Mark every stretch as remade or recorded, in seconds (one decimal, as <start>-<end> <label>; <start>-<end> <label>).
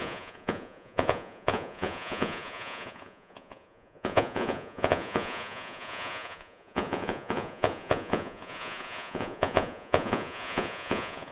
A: 0.0-11.3 remade